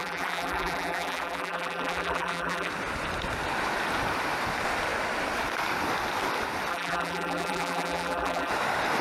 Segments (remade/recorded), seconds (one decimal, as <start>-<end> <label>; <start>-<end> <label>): 0.0-2.7 remade; 2.7-6.7 recorded; 6.7-8.5 remade; 8.5-9.0 recorded

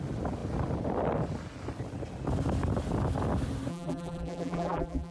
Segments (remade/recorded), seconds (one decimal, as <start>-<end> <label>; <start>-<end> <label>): 0.0-3.7 recorded; 3.7-5.1 remade

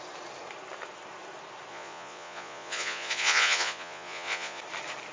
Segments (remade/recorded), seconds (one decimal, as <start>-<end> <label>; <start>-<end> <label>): 0.0-1.7 recorded; 1.7-4.6 remade; 4.6-5.1 recorded

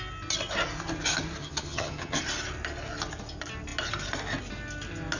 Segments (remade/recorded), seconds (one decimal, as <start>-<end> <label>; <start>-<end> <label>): 0.0-1.4 recorded; 1.4-2.2 remade; 2.2-5.2 recorded